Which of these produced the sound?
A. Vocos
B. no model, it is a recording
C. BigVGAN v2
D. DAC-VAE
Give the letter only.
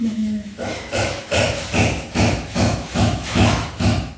D